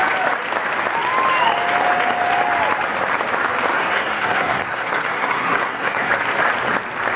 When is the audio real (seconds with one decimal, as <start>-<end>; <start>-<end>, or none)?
0.0-3.7; 6.1-7.2